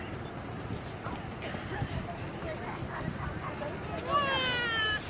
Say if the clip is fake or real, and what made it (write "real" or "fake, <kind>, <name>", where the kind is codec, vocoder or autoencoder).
real